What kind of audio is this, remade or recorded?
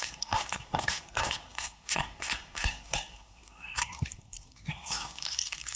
remade